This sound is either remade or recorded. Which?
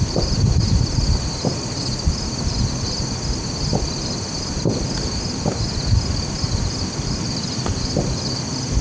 recorded